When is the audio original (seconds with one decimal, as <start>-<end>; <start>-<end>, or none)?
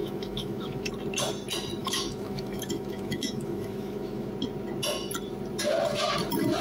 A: 0.9-1.8; 4.3-6.6